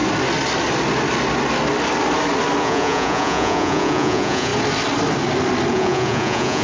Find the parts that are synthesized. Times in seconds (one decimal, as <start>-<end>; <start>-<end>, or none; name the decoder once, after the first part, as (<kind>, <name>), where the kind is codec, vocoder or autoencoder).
2.6-4.5 (vocoder, Vocos); 5.7-6.6